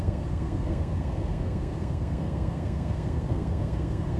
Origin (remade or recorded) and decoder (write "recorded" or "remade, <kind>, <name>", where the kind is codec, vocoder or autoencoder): remade, codec, SNAC